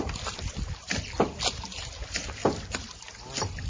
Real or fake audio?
real